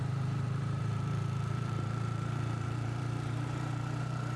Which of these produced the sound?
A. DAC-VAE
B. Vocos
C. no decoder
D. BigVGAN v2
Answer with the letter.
D